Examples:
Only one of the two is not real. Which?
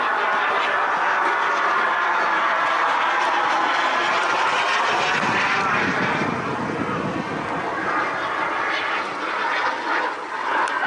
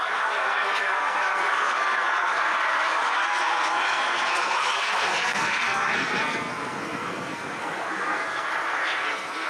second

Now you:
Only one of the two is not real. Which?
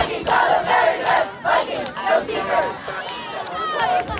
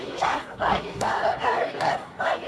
second